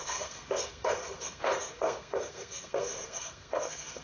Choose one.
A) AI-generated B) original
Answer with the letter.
A